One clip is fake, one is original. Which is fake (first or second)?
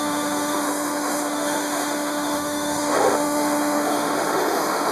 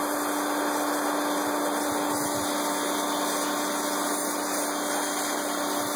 first